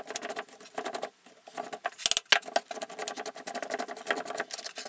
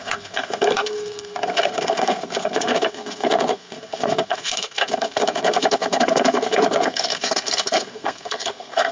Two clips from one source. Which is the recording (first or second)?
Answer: first